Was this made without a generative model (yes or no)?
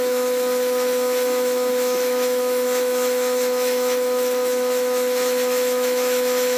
no